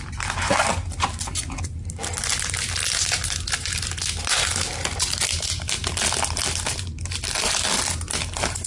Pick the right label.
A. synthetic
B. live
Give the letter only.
B